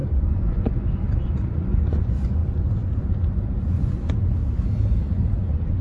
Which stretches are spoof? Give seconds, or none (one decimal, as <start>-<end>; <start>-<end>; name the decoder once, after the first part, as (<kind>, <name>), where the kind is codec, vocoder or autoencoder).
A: 0.0-4.4 (vocoder, Vocos); 5.1-5.8